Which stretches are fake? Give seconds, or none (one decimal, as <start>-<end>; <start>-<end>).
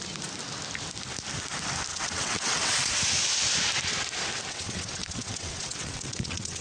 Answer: 1.9-2.7; 4.5-6.6